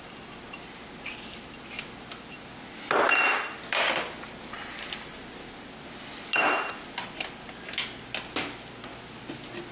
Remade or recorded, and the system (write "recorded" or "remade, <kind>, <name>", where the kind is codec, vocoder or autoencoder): recorded